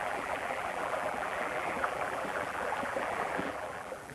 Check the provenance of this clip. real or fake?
fake